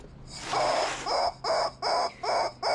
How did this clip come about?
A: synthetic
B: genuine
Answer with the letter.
B